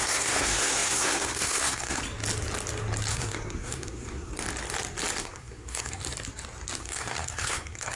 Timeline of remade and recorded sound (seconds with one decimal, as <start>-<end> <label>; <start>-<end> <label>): 0.0-2.0 remade; 2.0-3.1 recorded; 3.1-4.3 remade; 4.3-5.2 recorded; 5.2-6.0 remade; 6.0-6.8 recorded; 6.8-8.0 remade